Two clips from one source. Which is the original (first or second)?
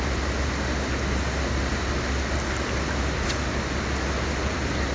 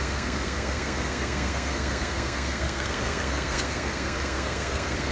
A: first